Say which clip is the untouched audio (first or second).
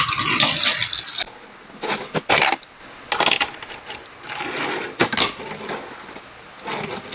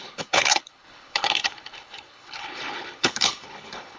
first